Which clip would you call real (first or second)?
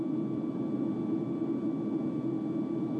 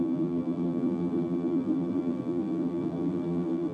first